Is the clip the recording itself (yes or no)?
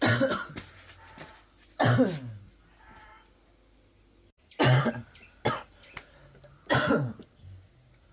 yes